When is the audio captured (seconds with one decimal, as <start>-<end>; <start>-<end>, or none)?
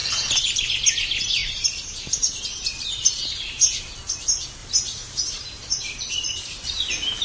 0.7-1.4; 3.8-4.6; 6.8-7.2